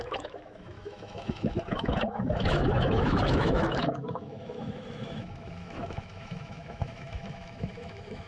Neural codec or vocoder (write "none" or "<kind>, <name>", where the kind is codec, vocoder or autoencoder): autoencoder, DAC-VAE